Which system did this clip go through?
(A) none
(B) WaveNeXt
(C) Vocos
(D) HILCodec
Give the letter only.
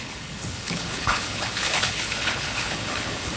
D